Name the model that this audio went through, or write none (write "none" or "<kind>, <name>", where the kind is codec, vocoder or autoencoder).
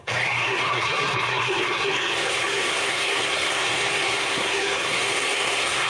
codec, SNAC